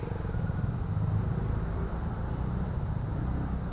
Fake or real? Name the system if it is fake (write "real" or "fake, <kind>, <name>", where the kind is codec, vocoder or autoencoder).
real